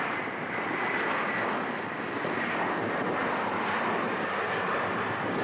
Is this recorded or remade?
recorded